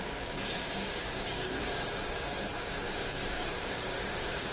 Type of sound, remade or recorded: remade